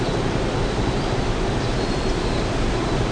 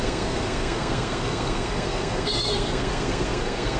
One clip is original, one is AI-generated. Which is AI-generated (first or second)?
second